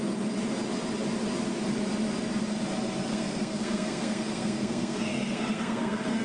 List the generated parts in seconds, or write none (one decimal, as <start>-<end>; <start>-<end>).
3.1-6.2